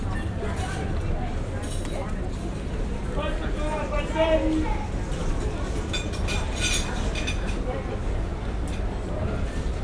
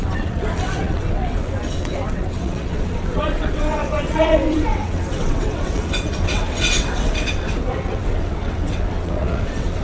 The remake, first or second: second